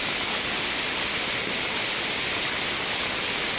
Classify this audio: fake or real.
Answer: real